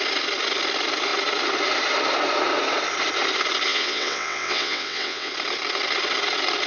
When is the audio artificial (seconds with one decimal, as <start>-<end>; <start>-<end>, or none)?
3.7-5.3